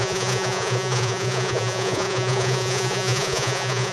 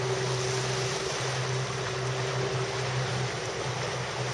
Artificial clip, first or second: first